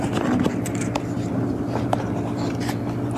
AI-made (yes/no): no